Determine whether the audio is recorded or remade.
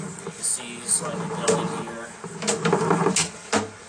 recorded